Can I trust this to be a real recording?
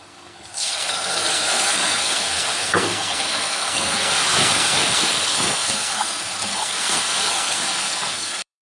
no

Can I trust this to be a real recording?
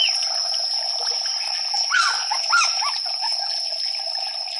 yes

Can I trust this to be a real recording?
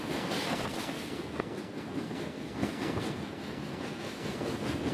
no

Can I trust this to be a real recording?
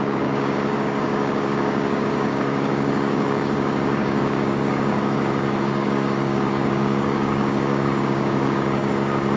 no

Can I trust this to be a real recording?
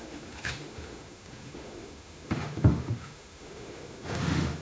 no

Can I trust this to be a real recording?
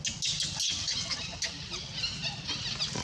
yes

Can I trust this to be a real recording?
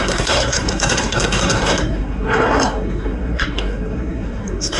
no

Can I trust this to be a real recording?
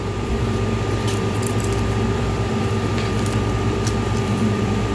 no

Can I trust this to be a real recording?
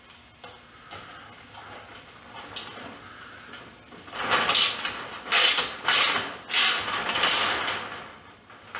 yes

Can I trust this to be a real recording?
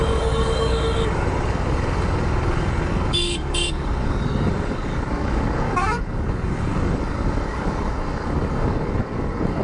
no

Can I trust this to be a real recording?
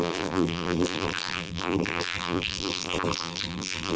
no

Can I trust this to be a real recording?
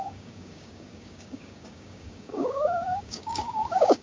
no